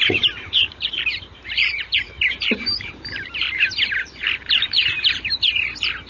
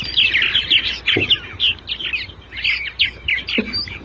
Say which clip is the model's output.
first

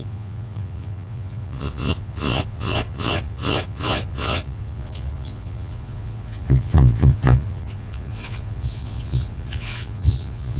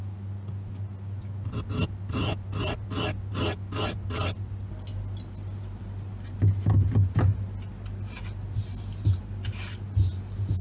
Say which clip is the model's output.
first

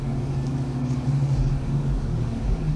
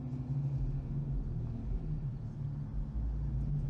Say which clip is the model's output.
first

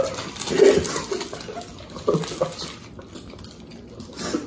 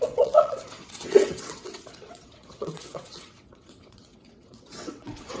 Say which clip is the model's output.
second